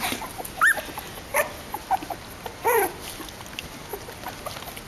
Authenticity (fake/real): real